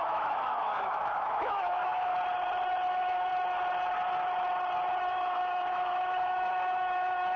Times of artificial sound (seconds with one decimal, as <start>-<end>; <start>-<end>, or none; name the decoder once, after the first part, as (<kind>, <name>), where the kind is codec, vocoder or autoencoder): 0.0-2.1 (autoencoder, DAC-VAE); 2.9-3.3; 5.0-7.4